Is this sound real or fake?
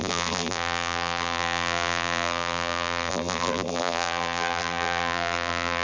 fake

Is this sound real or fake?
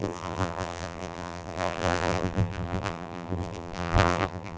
fake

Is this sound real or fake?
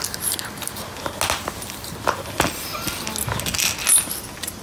real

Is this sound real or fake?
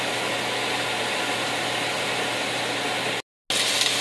real